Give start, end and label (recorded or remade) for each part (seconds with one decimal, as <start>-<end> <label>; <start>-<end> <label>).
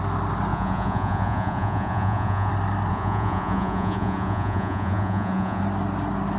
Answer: 0.0-0.5 recorded; 0.5-2.5 remade; 2.5-2.9 recorded; 2.9-5.6 remade; 5.6-6.4 recorded